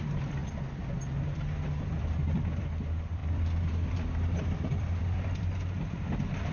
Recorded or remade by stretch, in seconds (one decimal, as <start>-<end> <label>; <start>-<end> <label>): 0.0-0.4 remade; 0.4-1.0 recorded; 1.0-6.5 remade